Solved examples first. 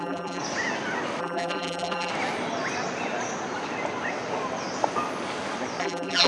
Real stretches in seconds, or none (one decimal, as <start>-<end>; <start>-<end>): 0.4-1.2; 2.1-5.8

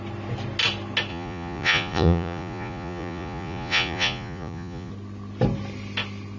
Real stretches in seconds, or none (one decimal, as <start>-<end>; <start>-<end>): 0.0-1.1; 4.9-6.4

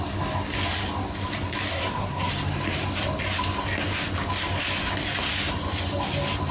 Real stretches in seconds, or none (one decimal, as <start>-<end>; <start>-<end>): 0.0-1.7; 2.3-6.5